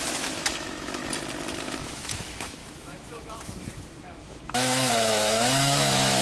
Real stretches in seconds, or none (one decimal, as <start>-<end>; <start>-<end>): 1.0-1.6